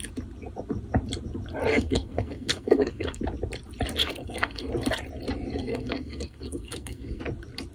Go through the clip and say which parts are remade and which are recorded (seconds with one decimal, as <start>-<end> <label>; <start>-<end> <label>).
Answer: 0.0-1.7 recorded; 1.7-3.2 remade; 3.2-4.0 recorded; 4.0-4.7 remade; 4.7-5.6 recorded; 5.6-7.2 remade; 7.2-7.7 recorded